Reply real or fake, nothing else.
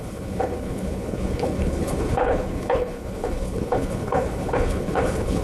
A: fake